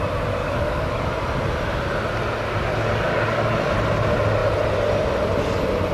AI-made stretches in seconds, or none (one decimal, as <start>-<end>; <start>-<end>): 0.4-1.0; 2.7-3.6